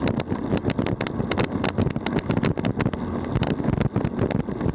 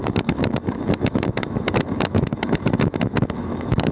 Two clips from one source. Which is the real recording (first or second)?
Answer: first